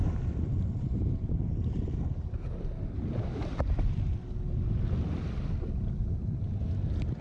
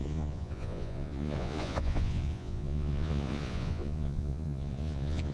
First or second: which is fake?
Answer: second